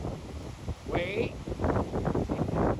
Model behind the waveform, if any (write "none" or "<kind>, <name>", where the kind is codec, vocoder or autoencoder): none